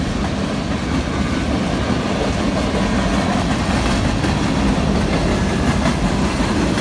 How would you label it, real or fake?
real